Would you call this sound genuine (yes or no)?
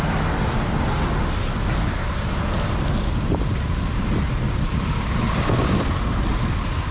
yes